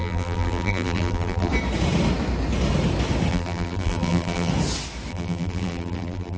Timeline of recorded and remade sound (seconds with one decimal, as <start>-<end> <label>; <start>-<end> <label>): 0.0-1.5 remade; 1.5-3.3 recorded; 3.3-4.5 remade; 4.5-5.1 recorded; 5.1-6.4 remade